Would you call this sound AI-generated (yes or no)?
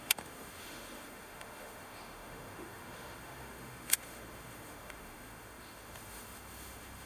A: yes